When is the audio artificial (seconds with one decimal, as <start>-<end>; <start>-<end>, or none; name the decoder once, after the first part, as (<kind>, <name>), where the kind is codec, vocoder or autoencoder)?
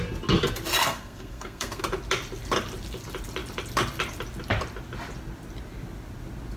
0.8-1.8 (codec, SNAC)